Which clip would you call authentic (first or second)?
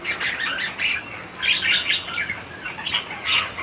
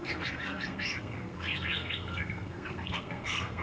first